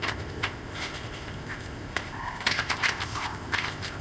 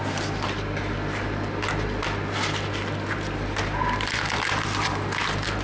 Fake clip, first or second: first